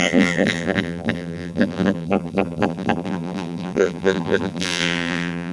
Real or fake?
fake